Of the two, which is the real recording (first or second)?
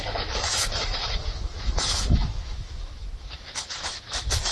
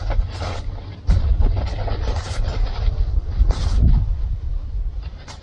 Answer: second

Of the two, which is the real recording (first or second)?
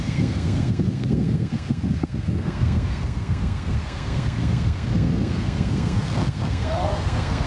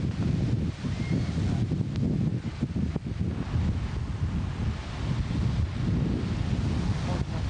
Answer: second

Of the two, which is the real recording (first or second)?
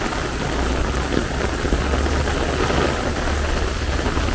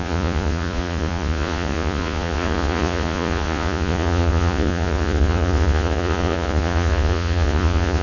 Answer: first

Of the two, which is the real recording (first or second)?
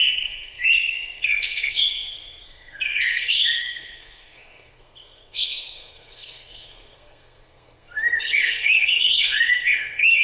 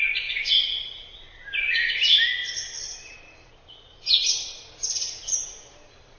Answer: second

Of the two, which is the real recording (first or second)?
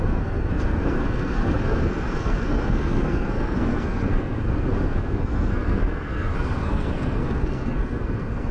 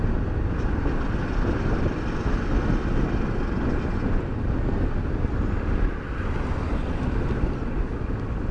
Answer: second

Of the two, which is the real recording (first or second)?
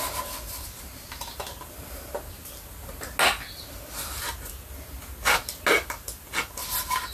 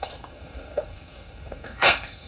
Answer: first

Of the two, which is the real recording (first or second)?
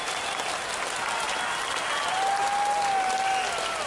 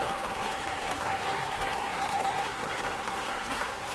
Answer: first